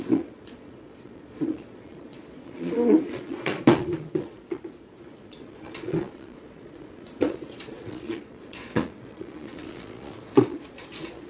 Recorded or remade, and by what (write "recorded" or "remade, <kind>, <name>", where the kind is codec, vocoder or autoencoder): remade, vocoder, Vocos